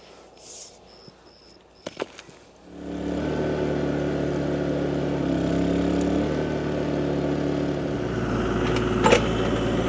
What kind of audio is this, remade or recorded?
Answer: recorded